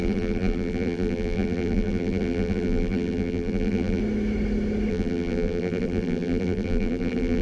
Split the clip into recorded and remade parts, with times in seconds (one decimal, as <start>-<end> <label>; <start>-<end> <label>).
0.0-4.0 remade; 4.0-4.9 recorded; 4.9-7.4 remade